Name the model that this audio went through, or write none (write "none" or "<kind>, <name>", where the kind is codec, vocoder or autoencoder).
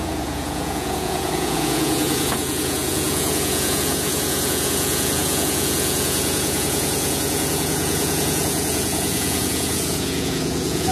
vocoder, Vocos